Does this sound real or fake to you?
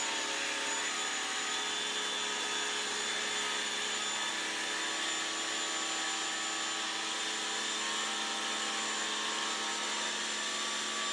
real